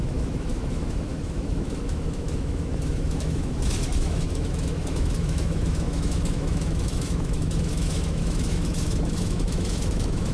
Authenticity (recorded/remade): remade